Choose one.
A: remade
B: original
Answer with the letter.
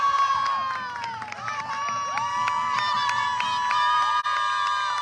B